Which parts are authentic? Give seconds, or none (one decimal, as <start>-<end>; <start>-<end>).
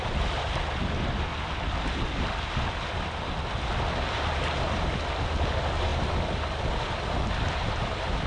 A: 0.0-8.3